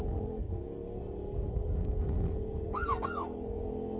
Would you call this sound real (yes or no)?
no